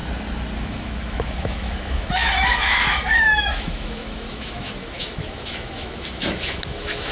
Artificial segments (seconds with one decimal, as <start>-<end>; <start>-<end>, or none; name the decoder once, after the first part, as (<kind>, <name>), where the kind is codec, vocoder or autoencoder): 0.6-7.1 (autoencoder, DAC-VAE)